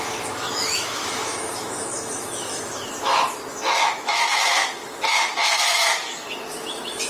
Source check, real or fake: fake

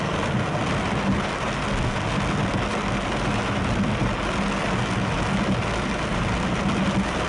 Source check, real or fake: real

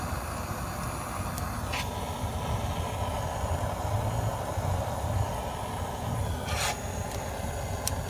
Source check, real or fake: real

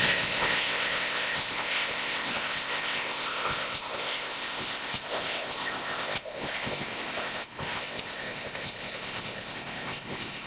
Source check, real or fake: fake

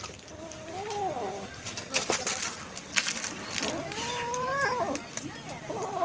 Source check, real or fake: real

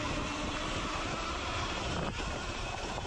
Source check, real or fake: real